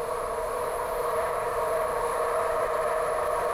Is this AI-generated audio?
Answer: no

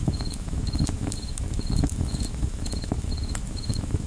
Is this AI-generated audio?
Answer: yes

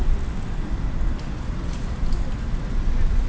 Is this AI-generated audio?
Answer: no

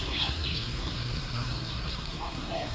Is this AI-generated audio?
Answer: yes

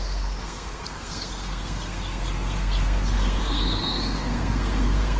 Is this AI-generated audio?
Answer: yes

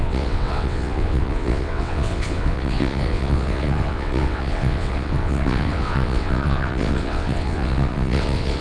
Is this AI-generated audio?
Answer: yes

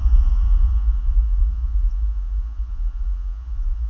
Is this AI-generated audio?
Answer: yes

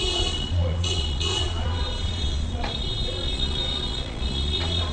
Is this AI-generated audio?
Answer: yes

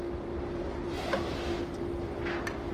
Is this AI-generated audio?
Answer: no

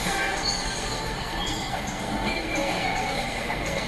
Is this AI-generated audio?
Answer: yes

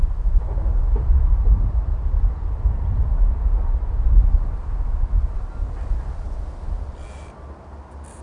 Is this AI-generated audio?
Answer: no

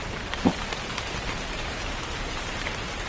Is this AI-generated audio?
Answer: yes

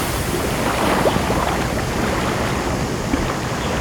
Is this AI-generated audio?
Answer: no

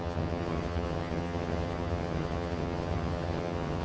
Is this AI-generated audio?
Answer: yes